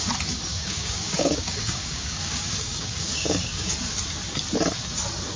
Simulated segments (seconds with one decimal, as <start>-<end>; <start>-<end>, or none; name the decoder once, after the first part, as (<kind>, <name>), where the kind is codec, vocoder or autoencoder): 0.5-3.7 (codec, DAC)